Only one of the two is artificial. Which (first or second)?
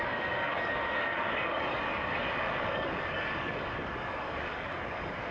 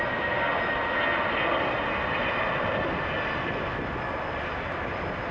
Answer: first